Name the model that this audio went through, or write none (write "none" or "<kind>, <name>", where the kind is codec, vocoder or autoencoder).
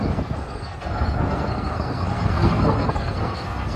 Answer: codec, SNAC